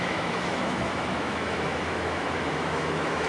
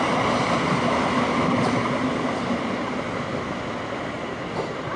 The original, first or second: second